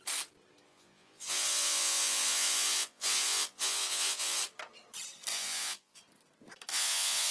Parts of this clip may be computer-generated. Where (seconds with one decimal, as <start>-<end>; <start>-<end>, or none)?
0.7-4.4; 5.3-6.0; 6.7-7.3